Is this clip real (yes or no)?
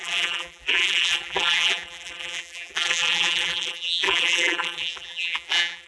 no